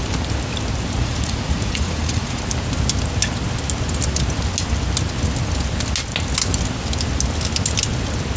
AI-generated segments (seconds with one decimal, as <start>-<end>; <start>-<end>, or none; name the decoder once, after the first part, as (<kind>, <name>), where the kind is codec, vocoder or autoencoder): 1.0-2.4 (vocoder, Vocos)